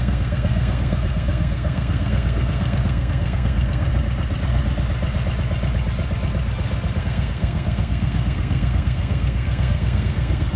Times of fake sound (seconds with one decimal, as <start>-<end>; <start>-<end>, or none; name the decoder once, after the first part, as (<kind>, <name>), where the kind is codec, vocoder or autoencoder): 0.0-3.9 (codec, SNAC); 7.0-10.6